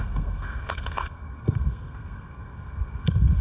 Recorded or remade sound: remade